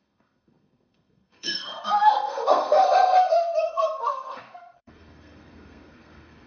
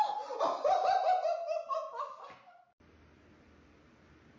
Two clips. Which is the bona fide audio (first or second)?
second